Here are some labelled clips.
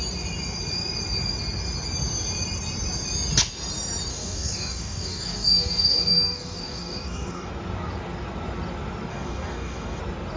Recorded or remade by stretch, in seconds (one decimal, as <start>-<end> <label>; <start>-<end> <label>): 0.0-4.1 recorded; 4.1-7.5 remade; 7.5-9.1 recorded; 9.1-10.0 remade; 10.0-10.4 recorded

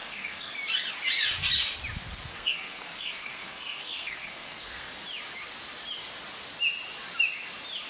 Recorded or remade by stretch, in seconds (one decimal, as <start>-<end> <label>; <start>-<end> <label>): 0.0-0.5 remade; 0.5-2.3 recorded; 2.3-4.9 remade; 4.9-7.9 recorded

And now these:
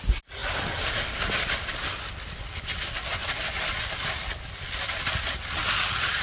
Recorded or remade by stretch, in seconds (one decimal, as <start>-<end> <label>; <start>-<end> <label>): 0.0-6.2 recorded

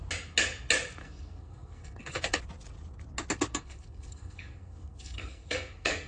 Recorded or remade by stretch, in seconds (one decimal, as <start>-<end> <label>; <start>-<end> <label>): 0.0-1.0 recorded; 1.0-2.4 remade; 2.4-3.5 recorded; 3.5-6.1 remade

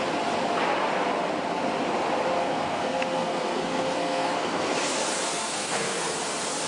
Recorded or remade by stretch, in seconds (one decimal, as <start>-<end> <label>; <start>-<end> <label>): 0.0-2.4 recorded; 2.4-4.7 remade; 4.7-5.2 recorded; 5.2-6.1 remade; 6.1-6.7 recorded